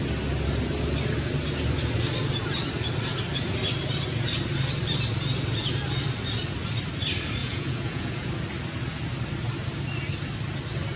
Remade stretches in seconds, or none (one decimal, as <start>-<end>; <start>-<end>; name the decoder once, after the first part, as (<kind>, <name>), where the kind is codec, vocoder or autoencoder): 7.4-8.3 (vocoder, Vocos)